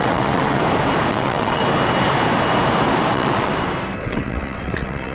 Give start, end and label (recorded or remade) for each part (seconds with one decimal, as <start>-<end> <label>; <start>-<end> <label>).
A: 0.0-0.6 remade; 0.6-1.1 recorded; 1.1-1.6 remade; 1.6-3.1 recorded; 3.1-3.5 remade; 3.5-4.0 recorded; 4.0-5.1 remade

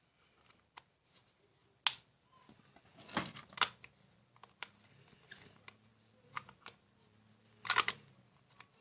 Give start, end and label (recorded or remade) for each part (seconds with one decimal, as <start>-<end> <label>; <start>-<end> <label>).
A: 0.0-8.8 recorded

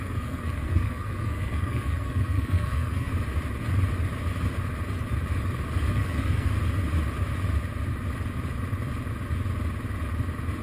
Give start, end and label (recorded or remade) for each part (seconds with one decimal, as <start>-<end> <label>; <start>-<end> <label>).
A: 0.0-3.1 remade; 3.1-5.9 recorded; 5.9-6.5 remade; 6.5-10.6 recorded

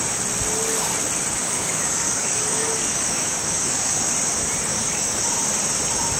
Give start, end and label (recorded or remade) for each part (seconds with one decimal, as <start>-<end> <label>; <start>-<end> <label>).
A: 0.0-1.4 recorded; 1.4-4.1 remade; 4.1-4.7 recorded; 4.7-5.3 remade; 5.3-6.2 recorded

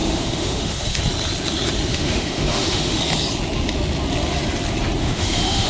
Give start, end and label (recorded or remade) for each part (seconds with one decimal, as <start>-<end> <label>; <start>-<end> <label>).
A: 0.0-1.0 remade; 1.0-1.9 recorded; 1.9-3.0 remade; 3.0-5.0 recorded; 5.0-5.7 remade

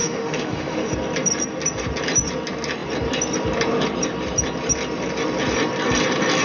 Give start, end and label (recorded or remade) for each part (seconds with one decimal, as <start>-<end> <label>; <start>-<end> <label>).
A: 0.0-0.9 remade; 0.9-6.4 recorded

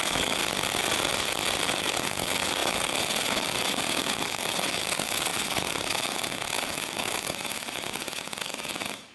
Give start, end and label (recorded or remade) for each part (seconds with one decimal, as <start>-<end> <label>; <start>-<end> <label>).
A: 0.0-0.4 remade; 0.4-1.6 recorded; 1.6-9.1 remade